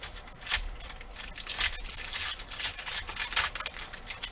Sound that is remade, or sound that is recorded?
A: remade